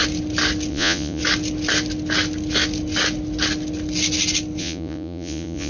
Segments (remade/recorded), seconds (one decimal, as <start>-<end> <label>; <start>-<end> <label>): 0.0-0.7 recorded; 0.7-1.2 remade; 1.2-4.6 recorded; 4.6-5.7 remade